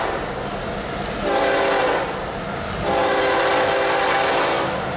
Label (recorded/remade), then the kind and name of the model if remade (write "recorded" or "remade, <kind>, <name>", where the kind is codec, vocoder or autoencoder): recorded